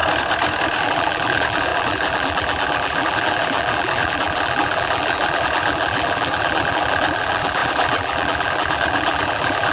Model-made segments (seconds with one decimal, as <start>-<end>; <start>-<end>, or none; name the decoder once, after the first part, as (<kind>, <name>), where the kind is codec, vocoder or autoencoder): 0.8-9.7 (vocoder, BigVGAN v2)